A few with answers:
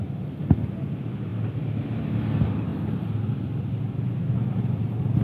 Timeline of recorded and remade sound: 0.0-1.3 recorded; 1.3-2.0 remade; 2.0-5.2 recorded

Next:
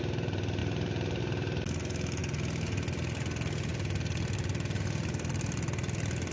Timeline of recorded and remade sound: 0.0-0.6 recorded; 0.6-1.2 remade; 1.2-6.3 recorded